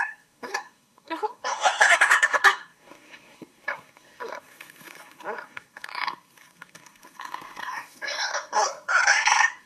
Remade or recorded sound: remade